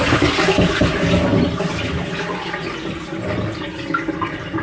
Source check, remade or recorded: recorded